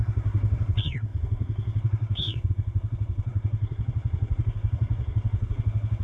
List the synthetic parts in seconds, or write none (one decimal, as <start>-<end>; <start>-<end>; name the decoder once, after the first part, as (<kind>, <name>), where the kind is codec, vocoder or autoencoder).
0.0-6.0 (codec, SNAC)